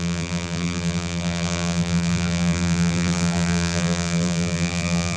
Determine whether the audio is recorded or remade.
remade